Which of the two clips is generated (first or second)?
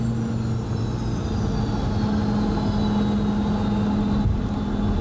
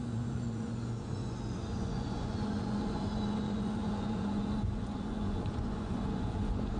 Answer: second